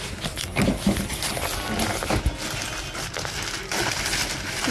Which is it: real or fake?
real